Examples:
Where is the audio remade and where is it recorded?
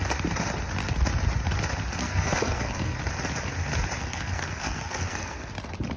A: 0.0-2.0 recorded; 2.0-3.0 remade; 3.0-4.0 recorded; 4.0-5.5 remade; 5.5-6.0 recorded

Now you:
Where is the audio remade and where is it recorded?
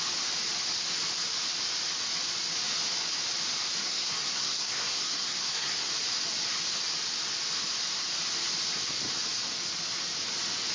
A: 0.0-3.8 recorded; 3.8-5.9 remade; 5.9-10.7 recorded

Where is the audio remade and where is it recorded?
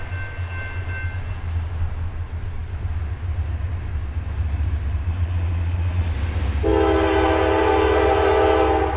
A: 0.0-5.1 recorded; 5.1-6.1 remade; 6.1-9.0 recorded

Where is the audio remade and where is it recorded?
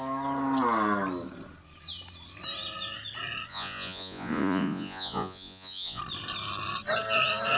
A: 0.0-3.5 recorded; 3.5-6.0 remade; 6.0-7.6 recorded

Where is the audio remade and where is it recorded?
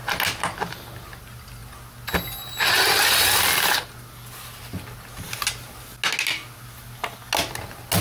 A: 0.0-8.0 recorded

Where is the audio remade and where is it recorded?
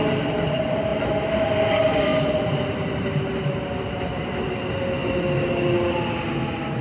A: 0.0-6.8 recorded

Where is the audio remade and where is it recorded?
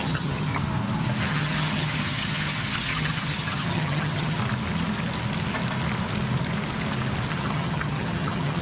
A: 0.0-0.5 remade; 0.5-1.2 recorded; 1.2-4.4 remade; 4.4-7.3 recorded; 7.3-8.6 remade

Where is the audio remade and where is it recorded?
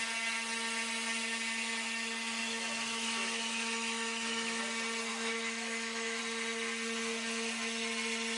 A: 0.0-2.4 recorded; 2.4-4.6 remade; 4.6-5.1 recorded; 5.1-6.2 remade; 6.2-8.4 recorded